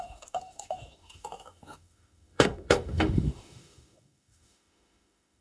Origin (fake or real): fake